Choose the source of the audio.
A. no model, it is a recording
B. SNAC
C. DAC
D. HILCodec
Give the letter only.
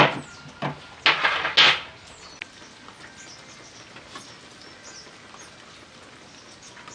A